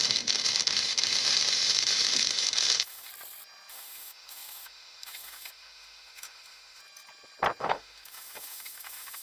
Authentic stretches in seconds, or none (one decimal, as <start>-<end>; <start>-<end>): 3.1-3.7; 6.8-7.6